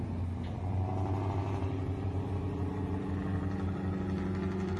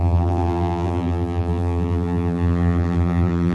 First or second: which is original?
first